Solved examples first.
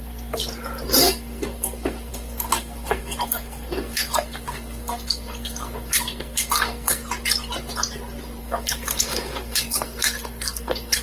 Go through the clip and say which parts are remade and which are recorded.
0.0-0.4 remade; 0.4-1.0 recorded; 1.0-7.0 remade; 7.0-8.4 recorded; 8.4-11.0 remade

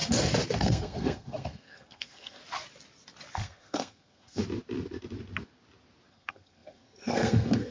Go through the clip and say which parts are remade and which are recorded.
0.0-0.6 recorded; 0.6-2.4 remade; 2.4-3.3 recorded; 3.3-4.4 remade; 4.4-6.1 recorded; 6.1-7.7 remade

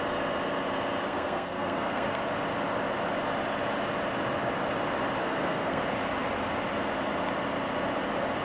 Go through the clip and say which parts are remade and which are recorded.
0.0-1.0 recorded; 1.0-2.2 remade; 2.2-5.2 recorded; 5.2-5.8 remade; 5.8-8.4 recorded

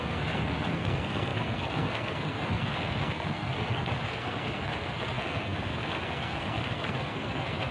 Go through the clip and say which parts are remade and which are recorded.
0.0-7.7 remade